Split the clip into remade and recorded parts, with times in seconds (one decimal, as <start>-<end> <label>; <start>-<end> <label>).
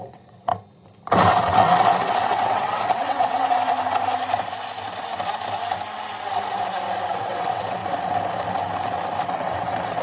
0.0-0.5 remade; 0.5-1.3 recorded; 1.3-3.4 remade; 3.4-7.1 recorded; 7.1-7.8 remade; 7.8-9.2 recorded; 9.2-10.0 remade